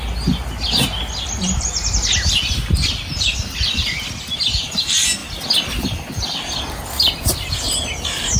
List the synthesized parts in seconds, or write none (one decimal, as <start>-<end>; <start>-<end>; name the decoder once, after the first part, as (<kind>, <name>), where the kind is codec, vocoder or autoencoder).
none

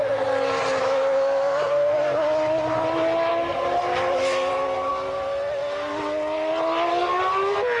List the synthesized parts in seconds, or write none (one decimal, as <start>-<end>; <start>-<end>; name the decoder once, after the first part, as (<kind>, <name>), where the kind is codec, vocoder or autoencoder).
0.8-1.7 (autoencoder, DAC-VAE)

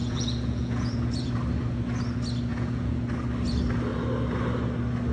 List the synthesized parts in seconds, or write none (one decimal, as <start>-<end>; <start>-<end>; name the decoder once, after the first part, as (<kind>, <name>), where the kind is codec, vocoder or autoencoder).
0.0-1.3 (vocoder, Vocos); 2.5-3.0

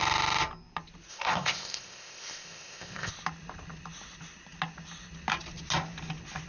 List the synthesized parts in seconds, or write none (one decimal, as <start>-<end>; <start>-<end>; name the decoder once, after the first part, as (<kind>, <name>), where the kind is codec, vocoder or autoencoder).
1.1-3.1 (codec, ZipCodec)

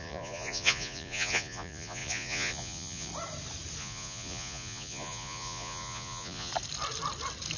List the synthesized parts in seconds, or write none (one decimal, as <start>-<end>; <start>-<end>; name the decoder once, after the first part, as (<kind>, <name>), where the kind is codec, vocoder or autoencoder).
0.0-3.1 (vocoder, Vocos); 3.8-6.5

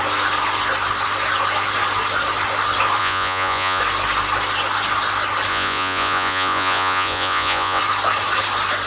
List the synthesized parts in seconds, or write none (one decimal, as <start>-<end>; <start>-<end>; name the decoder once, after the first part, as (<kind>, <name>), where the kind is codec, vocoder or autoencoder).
3.0-3.8 (vocoder, Vocos); 5.5-7.8

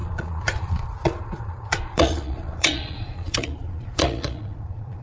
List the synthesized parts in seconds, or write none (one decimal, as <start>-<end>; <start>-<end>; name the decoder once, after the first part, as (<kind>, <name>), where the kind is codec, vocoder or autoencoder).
0.0-5.0 (vocoder, Vocos)